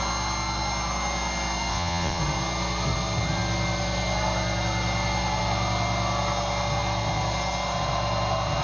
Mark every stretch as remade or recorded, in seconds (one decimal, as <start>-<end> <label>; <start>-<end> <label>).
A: 0.0-1.7 recorded; 1.7-2.2 remade; 2.2-8.6 recorded